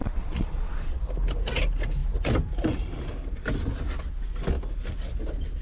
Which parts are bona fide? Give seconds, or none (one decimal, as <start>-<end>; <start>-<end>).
1.0-5.6